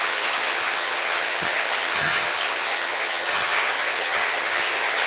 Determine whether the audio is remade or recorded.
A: remade